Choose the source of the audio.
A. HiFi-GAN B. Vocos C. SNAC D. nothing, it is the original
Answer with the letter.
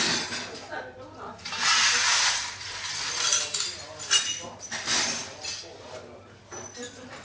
D